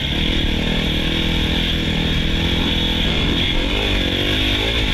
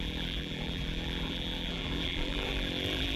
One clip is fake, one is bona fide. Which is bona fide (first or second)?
first